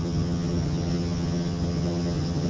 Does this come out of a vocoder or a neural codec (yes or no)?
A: yes